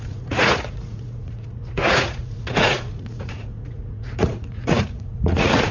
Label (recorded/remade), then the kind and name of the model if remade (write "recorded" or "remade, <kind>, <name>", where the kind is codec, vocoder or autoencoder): remade, vocoder, Vocos